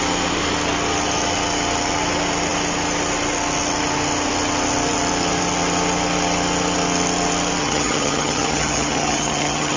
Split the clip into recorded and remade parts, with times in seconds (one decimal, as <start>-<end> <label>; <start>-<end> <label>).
0.0-7.6 recorded; 7.6-9.8 remade

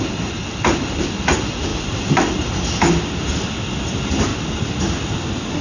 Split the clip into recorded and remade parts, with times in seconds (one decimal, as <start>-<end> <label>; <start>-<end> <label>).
0.0-5.6 recorded

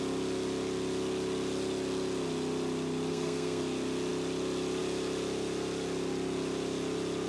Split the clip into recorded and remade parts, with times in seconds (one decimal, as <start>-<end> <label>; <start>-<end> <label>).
0.0-3.1 recorded; 3.1-3.6 remade; 3.6-7.3 recorded

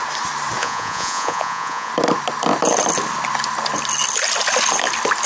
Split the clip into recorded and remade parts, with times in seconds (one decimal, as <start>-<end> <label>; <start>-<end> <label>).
0.0-0.6 recorded; 0.6-1.9 remade; 1.9-5.3 recorded

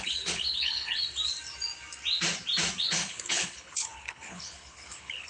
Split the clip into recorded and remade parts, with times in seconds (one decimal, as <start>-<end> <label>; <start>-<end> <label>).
0.0-1.0 remade; 1.0-2.8 recorded; 2.8-5.3 remade

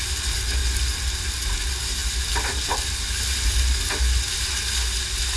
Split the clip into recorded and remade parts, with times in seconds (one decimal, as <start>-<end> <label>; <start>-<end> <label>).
0.0-5.4 recorded

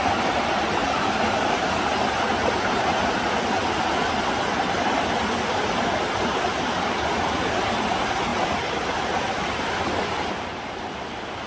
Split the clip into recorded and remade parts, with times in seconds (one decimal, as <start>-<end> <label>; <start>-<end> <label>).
0.0-0.8 recorded; 0.8-1.7 remade; 1.7-2.4 recorded; 2.4-3.1 remade; 3.1-11.5 recorded

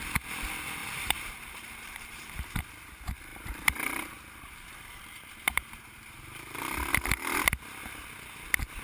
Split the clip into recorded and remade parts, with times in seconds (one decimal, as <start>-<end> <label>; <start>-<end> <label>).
0.0-0.8 recorded; 0.8-2.6 remade; 2.6-3.3 recorded; 3.3-6.9 remade; 6.9-8.8 recorded